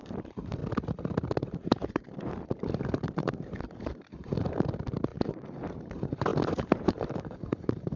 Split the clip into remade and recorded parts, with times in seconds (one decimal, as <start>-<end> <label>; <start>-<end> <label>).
0.0-0.6 remade; 0.6-1.4 recorded; 1.4-8.0 remade